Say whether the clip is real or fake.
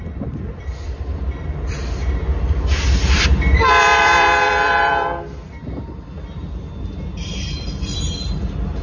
fake